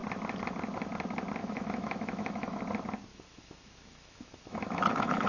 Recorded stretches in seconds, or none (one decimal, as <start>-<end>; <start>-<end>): 0.0-1.4; 2.6-3.1

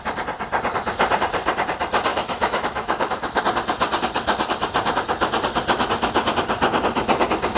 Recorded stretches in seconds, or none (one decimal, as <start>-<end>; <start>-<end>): 0.0-2.1; 3.4-7.6

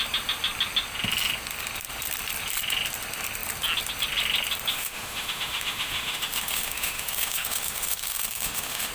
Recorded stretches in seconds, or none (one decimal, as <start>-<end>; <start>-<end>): 0.0-4.7

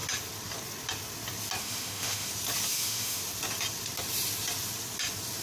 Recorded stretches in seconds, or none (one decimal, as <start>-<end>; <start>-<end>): 0.0-1.6; 2.3-2.7; 3.2-5.4

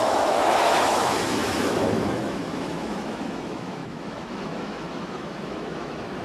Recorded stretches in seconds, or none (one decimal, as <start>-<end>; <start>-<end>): none